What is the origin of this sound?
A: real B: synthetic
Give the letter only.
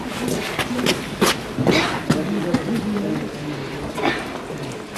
A